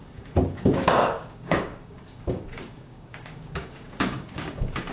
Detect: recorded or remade remade